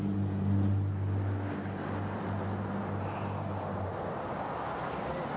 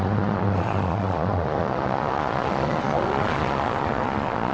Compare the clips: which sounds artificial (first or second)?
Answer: second